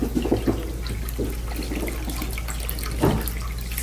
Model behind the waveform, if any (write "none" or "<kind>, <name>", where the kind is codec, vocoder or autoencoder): none